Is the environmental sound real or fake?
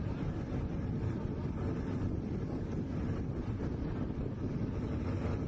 real